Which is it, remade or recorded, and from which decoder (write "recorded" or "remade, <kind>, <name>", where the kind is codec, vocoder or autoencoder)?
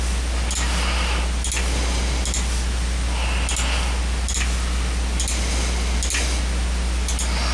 recorded